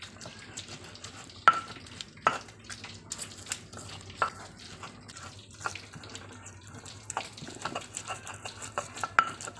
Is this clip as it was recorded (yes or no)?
yes